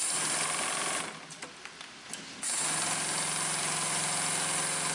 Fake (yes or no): no